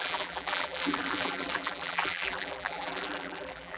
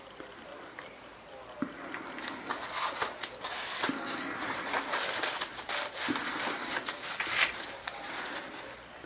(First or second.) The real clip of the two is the second